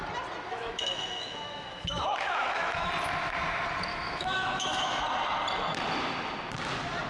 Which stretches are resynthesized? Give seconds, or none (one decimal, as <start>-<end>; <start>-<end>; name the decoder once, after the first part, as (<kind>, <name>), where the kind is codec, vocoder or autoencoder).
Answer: 0.5-2.9 (autoencoder, DAC-VAE); 3.9-5.0